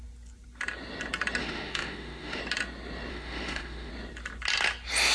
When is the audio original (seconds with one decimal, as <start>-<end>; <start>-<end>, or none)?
0.0-1.4; 2.4-3.1; 3.9-5.1